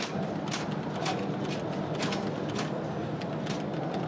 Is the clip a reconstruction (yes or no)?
no